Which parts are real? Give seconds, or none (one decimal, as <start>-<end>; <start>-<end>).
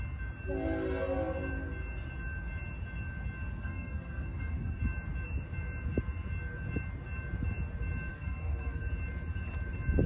0.0-3.6; 4.8-8.1; 8.8-10.1